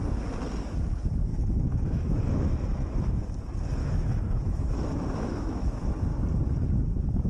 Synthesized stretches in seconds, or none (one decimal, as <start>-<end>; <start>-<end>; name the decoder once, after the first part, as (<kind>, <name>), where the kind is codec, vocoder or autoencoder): 1.3-3.2 (autoencoder, DAC-VAE); 3.8-5.9